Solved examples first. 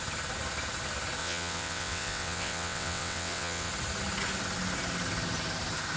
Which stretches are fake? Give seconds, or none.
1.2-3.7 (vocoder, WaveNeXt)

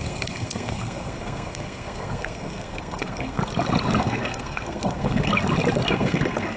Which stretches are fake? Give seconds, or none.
0.0-3.4 (codec, SNAC); 4.0-5.3; 5.9-6.6

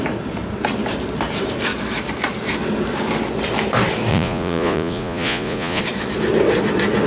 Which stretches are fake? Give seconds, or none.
4.1-5.8 (vocoder, Vocos)

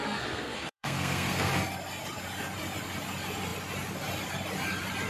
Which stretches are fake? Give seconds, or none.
0.0-1.5 (codec, SNAC)

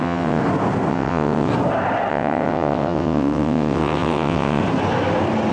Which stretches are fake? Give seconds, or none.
0.0-0.4 (vocoder, WaveNeXt); 0.9-1.5; 2.1-4.6

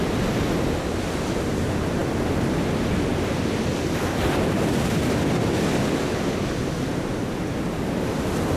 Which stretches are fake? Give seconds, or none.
none